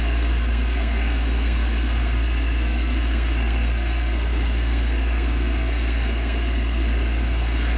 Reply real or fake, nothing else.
fake